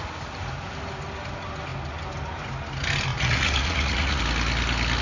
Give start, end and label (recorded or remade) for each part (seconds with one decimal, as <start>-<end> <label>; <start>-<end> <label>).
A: 0.0-3.1 recorded; 3.1-4.2 remade; 4.2-5.0 recorded